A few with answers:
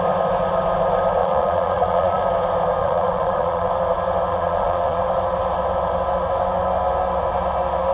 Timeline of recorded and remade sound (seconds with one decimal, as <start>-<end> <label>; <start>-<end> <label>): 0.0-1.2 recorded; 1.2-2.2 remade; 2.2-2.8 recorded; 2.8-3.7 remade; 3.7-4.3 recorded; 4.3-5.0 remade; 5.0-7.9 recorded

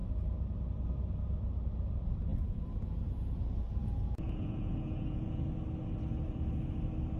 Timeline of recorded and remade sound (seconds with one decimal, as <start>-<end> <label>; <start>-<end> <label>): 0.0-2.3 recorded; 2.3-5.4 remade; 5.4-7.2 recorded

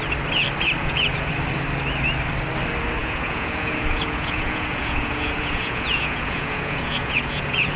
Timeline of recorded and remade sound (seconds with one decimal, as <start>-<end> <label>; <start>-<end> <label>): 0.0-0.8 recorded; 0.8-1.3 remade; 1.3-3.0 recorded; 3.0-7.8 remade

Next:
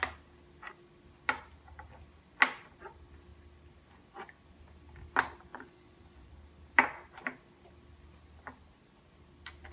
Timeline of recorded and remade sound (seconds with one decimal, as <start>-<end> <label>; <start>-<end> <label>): 0.0-5.5 recorded; 5.5-6.3 remade; 6.3-9.7 recorded

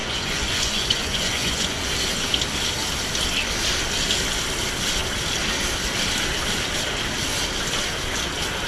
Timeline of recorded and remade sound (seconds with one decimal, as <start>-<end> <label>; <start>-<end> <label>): 0.0-1.9 remade; 1.9-8.7 recorded